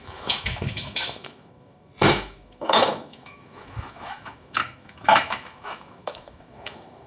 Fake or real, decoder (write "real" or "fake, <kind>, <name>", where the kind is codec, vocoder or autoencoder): fake, autoencoder, DAC-VAE